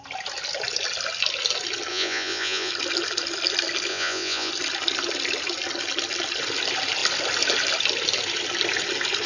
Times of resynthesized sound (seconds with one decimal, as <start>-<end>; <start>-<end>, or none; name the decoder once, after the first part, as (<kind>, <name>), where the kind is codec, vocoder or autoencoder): 1.9-2.7 (vocoder, Vocos); 3.9-4.5